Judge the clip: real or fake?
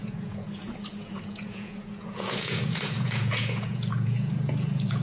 fake